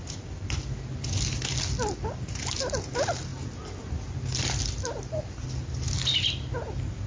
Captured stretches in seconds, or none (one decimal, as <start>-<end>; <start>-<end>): 0.0-7.1